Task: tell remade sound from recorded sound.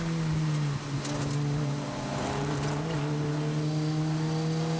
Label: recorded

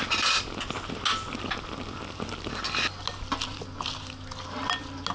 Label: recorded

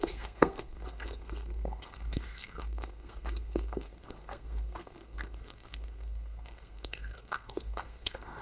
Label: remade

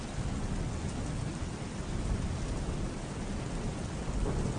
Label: recorded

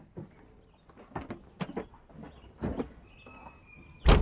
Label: recorded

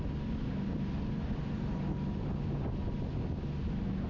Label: recorded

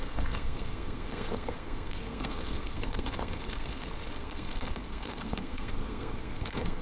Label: remade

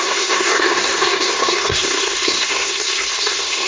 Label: remade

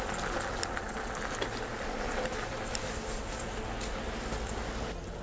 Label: recorded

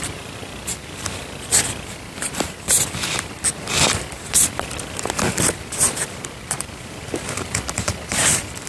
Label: recorded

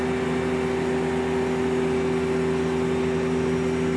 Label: recorded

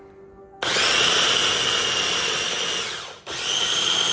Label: recorded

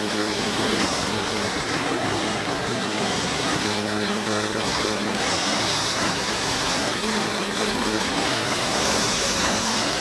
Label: remade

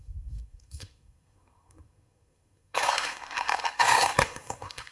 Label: remade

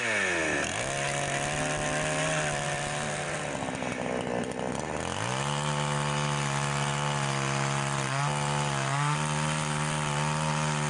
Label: recorded